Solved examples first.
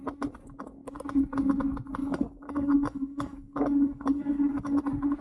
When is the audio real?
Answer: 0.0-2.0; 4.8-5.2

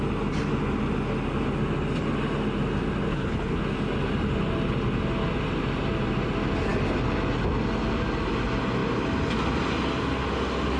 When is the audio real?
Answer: 0.0-3.1; 3.6-10.8

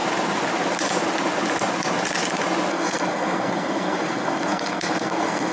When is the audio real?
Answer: 0.0-2.7

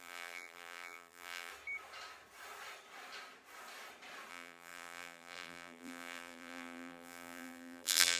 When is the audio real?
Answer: 1.5-4.3

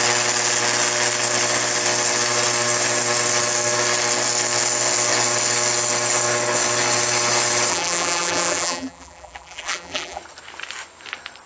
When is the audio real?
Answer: 0.0-7.7; 10.2-11.5

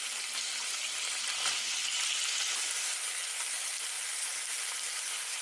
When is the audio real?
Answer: 0.0-5.4

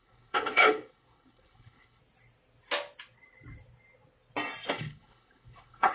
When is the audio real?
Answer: 2.0-4.7